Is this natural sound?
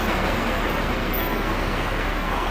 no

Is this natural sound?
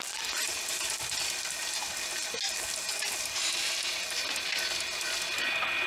yes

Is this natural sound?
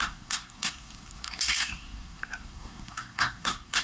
no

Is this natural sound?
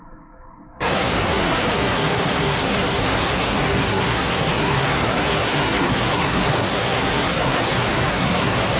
no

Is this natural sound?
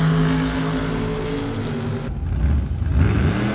yes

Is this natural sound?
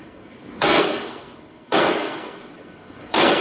no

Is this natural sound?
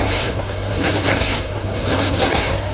no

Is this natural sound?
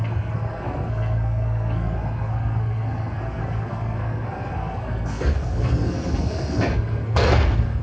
no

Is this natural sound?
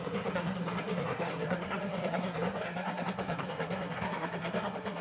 no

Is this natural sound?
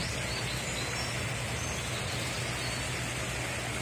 yes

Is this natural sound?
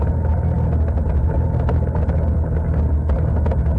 yes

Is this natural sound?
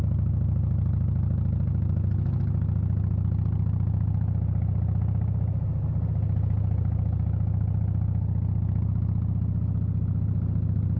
yes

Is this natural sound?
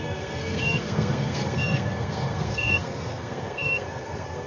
no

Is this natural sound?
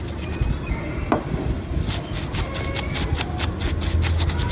yes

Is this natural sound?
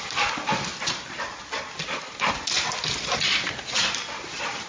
yes